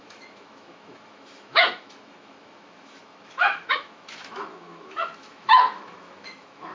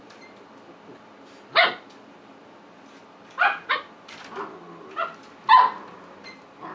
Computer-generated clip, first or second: first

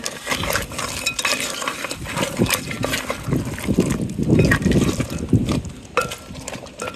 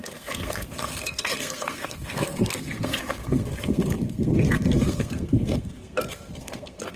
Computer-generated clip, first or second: second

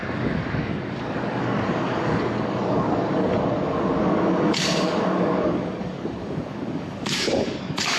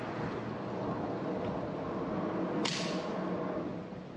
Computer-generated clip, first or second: first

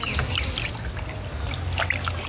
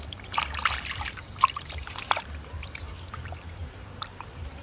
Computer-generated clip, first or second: second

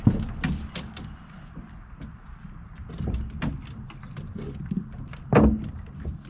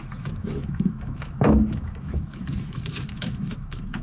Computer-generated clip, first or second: second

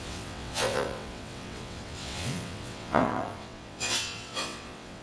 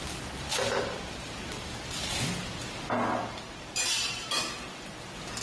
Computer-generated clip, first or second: first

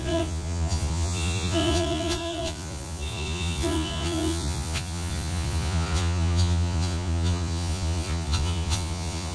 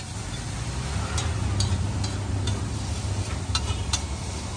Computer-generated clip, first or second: first